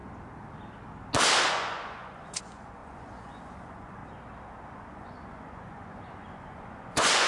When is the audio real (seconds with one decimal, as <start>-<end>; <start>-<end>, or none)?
0.0-1.5; 4.0-4.7